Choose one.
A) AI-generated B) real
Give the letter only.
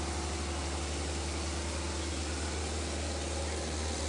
B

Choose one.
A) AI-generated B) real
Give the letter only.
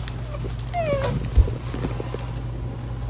B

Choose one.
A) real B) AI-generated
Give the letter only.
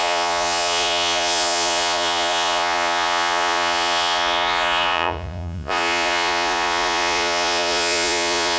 B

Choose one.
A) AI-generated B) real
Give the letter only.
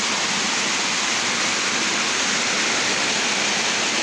B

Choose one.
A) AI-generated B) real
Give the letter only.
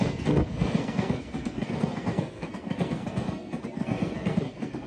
A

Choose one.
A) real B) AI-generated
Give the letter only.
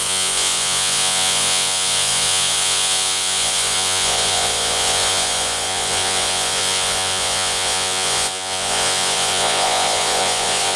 B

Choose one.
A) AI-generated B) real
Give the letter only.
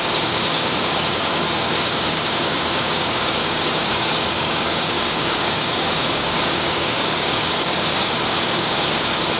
A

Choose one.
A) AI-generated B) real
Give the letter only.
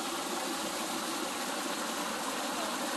B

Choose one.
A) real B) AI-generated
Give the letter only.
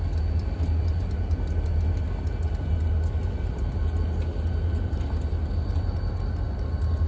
A